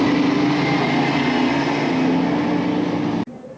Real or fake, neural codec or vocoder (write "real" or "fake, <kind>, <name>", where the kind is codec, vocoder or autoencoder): real